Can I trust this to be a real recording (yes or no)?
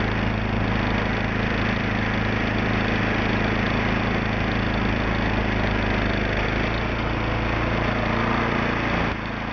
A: yes